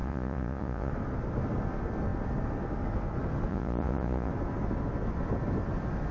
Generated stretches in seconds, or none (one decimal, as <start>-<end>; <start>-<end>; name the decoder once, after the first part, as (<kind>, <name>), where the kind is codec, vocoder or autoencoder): 0.0-0.9 (vocoder, Vocos); 3.5-4.3